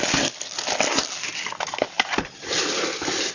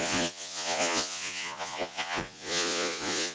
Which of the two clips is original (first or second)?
first